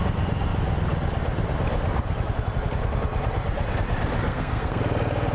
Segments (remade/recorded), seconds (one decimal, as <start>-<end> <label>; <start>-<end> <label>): 0.0-4.3 recorded; 4.3-4.8 remade; 4.8-5.3 recorded